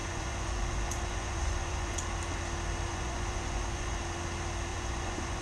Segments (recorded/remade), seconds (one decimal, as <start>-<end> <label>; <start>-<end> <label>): 0.0-2.0 remade; 2.0-2.9 recorded; 2.9-4.0 remade; 4.0-4.7 recorded; 4.7-5.4 remade